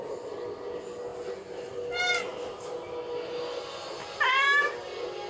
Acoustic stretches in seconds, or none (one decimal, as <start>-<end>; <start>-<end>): 0.0-5.3